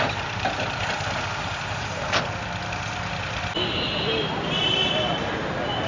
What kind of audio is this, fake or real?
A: real